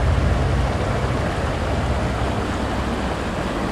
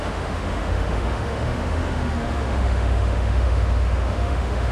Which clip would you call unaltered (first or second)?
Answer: first